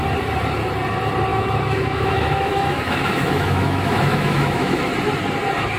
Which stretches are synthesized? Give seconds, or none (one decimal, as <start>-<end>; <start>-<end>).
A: 1.3-4.8